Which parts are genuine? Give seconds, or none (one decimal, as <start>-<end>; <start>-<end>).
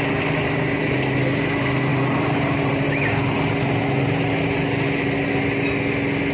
0.0-1.9; 2.9-6.3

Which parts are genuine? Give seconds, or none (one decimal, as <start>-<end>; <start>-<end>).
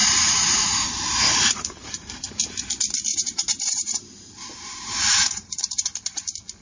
2.2-3.1; 5.6-6.6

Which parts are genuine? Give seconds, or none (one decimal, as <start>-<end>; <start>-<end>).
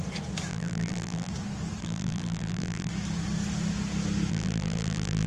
0.0-0.5; 1.3-1.8; 2.9-4.3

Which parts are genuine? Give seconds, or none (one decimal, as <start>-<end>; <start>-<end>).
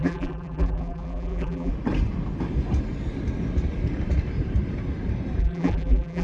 1.7-5.4